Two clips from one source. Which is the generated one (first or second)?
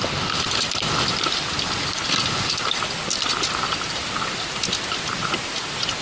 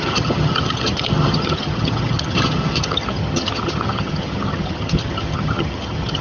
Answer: second